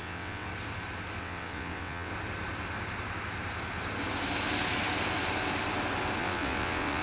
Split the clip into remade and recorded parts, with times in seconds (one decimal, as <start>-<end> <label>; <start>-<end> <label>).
0.0-0.5 remade; 0.5-1.2 recorded; 1.2-2.1 remade; 2.1-6.2 recorded; 6.2-7.0 remade